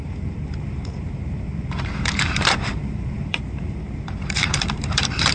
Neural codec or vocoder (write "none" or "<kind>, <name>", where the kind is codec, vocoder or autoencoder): vocoder, BigVGAN v2